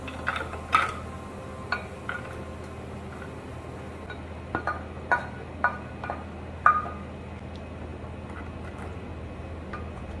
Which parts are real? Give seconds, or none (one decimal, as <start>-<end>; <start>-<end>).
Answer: 0.0-10.2